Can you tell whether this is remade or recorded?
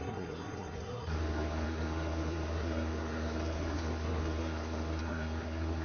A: remade